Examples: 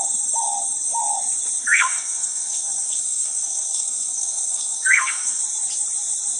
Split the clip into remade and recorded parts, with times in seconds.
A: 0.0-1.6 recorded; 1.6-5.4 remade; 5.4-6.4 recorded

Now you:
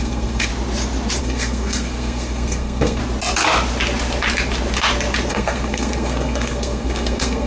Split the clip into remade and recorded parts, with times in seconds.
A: 0.0-0.5 remade; 0.5-1.2 recorded; 1.2-3.0 remade; 3.0-5.3 recorded; 5.3-7.5 remade

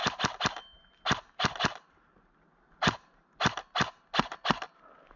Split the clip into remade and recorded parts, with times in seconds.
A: 0.0-5.2 recorded

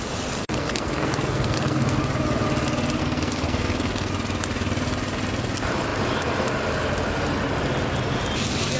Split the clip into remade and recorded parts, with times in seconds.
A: 0.0-0.4 recorded; 0.4-2.0 remade; 2.0-3.0 recorded; 3.0-4.1 remade; 4.1-8.8 recorded

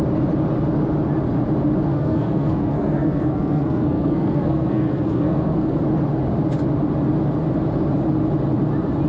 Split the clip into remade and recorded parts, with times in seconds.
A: 0.0-1.9 recorded; 1.9-5.8 remade; 5.8-9.1 recorded

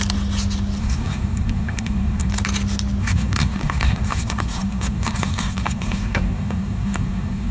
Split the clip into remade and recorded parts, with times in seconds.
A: 0.0-0.8 recorded; 0.8-2.3 remade; 2.3-3.0 recorded; 3.0-7.5 remade